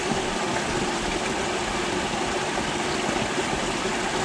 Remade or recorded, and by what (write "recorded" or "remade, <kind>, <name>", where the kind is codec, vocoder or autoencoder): recorded